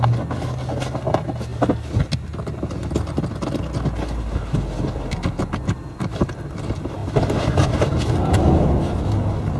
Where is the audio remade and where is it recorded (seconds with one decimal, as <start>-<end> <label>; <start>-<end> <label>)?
0.0-9.6 recorded